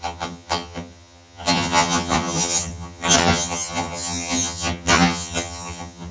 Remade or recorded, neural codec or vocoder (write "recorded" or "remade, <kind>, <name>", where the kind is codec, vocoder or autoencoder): remade, vocoder, HiFi-GAN